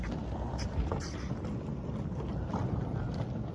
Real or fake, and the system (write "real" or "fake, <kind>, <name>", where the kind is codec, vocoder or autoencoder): real